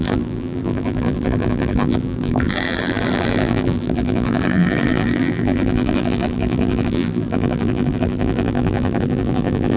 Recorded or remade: remade